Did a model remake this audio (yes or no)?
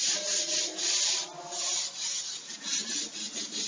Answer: no